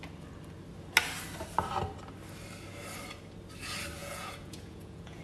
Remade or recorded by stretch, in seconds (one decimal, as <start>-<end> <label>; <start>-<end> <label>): 0.0-4.0 recorded; 4.0-5.2 remade